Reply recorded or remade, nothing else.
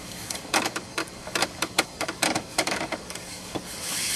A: remade